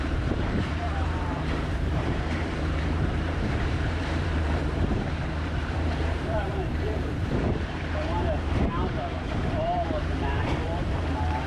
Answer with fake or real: fake